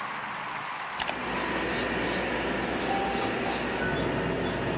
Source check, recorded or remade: recorded